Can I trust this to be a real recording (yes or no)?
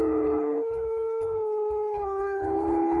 no